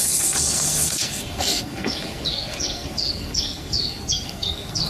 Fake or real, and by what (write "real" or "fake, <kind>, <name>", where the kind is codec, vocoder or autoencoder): fake, codec, SNAC